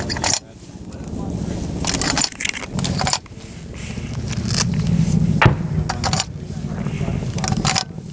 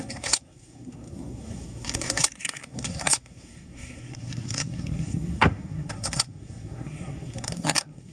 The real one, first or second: first